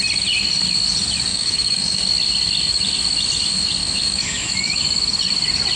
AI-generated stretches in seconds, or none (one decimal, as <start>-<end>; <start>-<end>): 1.3-2.0; 3.8-4.8